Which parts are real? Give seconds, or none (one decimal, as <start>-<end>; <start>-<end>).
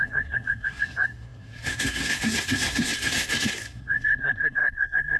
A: none